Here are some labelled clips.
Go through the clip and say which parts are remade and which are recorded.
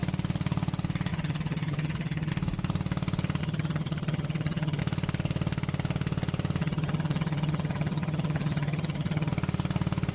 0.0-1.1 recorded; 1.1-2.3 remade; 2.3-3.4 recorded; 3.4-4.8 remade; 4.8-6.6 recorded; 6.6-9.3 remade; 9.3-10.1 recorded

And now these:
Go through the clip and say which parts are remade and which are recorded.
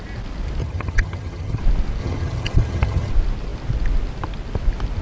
0.0-0.6 recorded; 0.6-1.6 remade; 1.6-2.0 recorded; 2.0-3.1 remade; 3.1-5.0 recorded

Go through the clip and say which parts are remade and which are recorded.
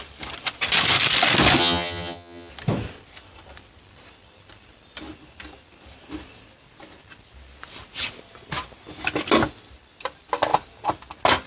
0.0-1.6 recorded; 1.6-2.5 remade; 2.5-11.5 recorded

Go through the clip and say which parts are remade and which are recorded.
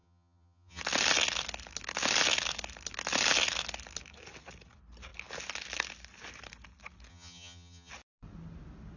0.0-0.8 remade; 0.8-7.1 recorded; 7.1-7.9 remade; 7.9-9.0 recorded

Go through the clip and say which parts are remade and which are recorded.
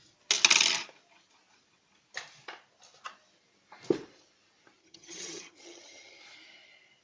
0.0-4.8 recorded; 4.8-6.2 remade; 6.2-7.0 recorded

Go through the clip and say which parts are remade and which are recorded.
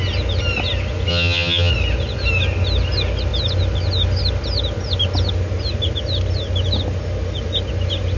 0.0-1.1 recorded; 1.1-1.7 remade; 1.7-8.2 recorded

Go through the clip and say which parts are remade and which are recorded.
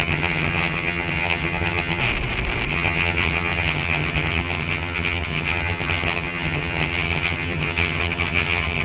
0.0-2.0 remade; 2.0-2.7 recorded; 2.7-8.8 remade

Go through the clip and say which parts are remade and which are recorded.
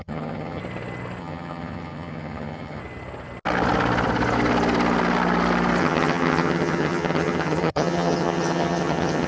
0.0-0.6 remade; 0.6-1.2 recorded; 1.2-2.8 remade; 2.8-5.8 recorded; 5.8-9.3 remade